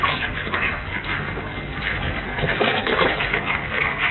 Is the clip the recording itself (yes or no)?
no